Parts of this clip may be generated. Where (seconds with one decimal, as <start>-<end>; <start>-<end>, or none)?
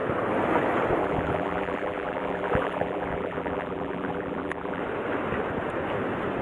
1.0-4.8